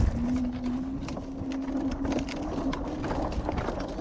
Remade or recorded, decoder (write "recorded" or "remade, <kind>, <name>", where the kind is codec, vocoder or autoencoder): recorded